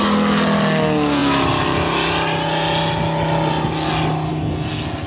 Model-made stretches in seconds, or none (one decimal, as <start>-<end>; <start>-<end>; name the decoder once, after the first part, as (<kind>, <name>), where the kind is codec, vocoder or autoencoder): none